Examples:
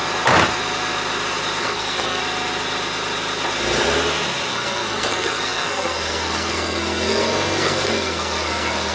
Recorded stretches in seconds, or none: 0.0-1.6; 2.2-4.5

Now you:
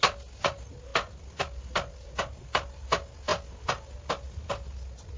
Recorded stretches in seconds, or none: 0.0-5.2

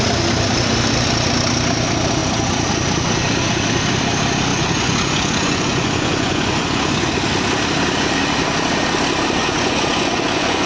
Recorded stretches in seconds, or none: 0.0-4.5; 7.1-9.4

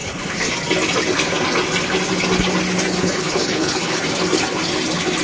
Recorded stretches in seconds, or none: 0.5-3.0; 4.0-5.2

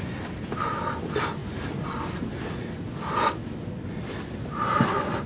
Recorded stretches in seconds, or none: 0.0-5.3

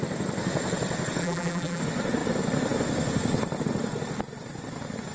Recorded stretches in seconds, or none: 0.0-1.2; 1.8-5.1

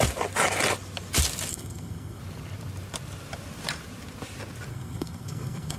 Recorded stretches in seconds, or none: 0.0-1.5; 2.2-4.7

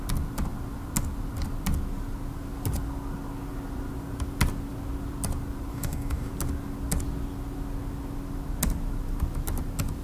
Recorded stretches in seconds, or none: 0.0-5.7; 6.3-10.0